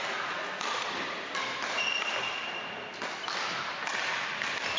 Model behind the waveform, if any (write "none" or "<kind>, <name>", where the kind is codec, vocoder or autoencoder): none